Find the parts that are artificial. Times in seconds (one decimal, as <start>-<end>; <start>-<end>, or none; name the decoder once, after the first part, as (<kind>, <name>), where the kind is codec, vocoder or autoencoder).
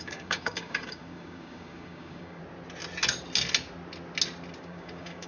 0.0-2.4 (codec, DAC); 4.6-5.3